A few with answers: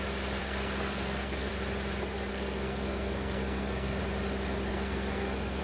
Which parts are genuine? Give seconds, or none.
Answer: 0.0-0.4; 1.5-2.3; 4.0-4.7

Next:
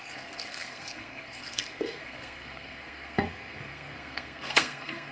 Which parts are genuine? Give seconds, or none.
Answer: none

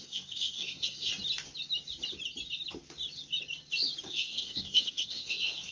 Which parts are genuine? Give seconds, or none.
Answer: 1.1-4.0

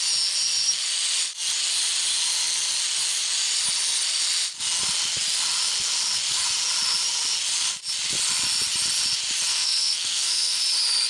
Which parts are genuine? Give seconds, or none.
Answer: 0.0-9.5; 10.6-11.1

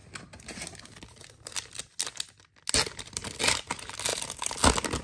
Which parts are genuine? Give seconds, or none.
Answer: 0.0-5.0